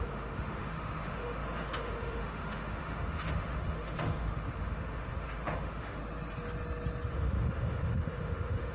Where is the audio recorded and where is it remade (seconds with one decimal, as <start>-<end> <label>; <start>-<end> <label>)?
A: 0.0-6.0 remade; 6.0-7.1 recorded; 7.1-8.7 remade